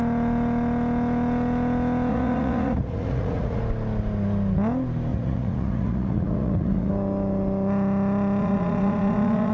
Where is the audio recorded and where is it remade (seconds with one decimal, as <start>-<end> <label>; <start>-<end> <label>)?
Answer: 0.0-2.1 recorded; 2.1-3.6 remade; 3.6-5.1 recorded; 5.1-6.9 remade; 6.9-8.4 recorded; 8.4-9.5 remade